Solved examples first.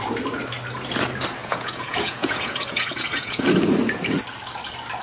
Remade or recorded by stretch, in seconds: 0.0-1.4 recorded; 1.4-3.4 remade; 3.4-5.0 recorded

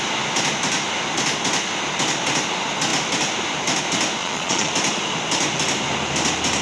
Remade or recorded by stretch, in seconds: 0.0-4.2 recorded; 4.2-4.7 remade; 4.7-6.6 recorded

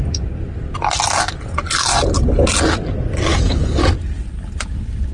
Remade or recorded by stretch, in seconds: 0.0-3.3 recorded; 3.3-3.8 remade; 3.8-5.1 recorded

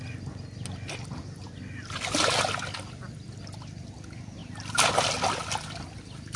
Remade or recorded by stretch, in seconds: 0.0-6.4 recorded